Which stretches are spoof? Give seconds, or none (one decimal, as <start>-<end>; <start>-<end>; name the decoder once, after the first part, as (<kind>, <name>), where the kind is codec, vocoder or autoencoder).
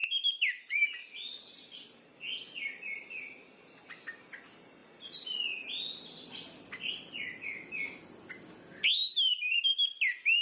0.0-0.9 (vocoder, BigVGAN v2); 9.0-9.6